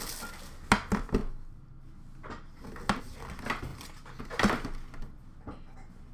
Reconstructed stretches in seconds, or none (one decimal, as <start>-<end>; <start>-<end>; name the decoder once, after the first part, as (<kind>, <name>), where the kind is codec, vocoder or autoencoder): none